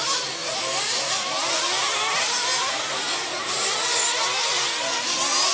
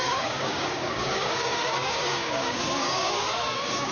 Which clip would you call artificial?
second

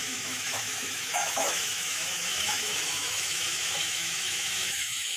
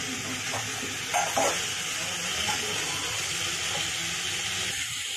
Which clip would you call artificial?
first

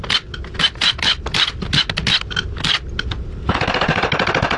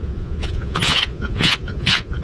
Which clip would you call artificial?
second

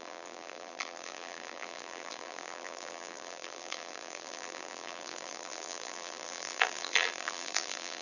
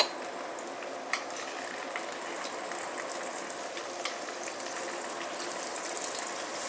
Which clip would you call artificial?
first